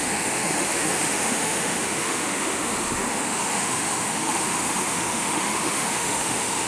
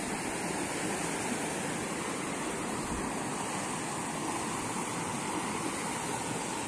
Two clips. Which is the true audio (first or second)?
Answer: second